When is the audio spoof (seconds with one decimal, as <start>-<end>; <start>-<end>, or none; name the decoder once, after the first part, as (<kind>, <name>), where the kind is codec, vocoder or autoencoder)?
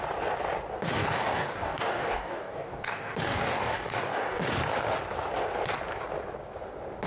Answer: 1.0-4.4 (codec, DAC)